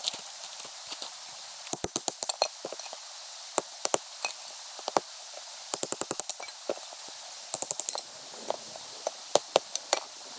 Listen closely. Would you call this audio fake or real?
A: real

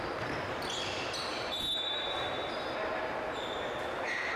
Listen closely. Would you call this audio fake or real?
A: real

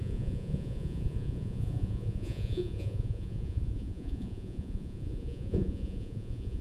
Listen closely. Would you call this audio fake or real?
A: fake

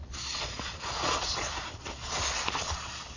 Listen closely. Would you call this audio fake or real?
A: fake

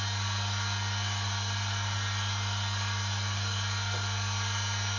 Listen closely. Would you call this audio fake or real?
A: real